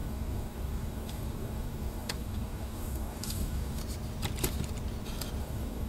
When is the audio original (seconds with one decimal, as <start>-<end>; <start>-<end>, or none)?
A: 3.8-5.4